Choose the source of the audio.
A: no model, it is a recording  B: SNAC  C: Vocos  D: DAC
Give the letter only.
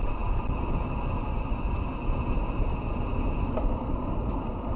A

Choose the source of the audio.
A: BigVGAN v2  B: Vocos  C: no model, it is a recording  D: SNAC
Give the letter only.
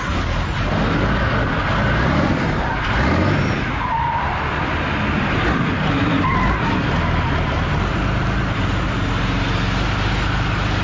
C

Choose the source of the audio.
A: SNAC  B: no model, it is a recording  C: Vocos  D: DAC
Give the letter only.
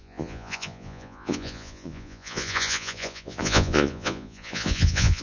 C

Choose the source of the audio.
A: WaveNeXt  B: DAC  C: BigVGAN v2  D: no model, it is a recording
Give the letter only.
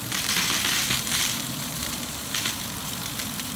C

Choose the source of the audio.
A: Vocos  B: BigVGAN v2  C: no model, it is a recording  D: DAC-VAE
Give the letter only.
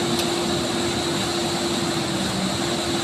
C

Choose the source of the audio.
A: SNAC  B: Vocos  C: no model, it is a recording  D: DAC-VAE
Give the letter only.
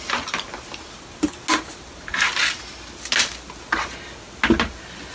C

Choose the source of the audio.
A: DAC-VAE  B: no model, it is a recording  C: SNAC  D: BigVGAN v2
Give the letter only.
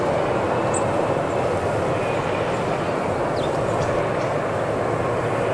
B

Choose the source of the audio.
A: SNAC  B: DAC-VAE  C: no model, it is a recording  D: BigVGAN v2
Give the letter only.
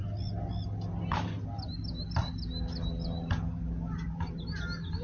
C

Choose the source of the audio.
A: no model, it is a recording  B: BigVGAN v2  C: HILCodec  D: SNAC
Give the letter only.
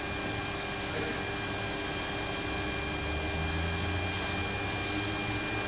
A